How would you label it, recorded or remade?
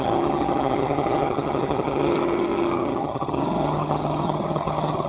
remade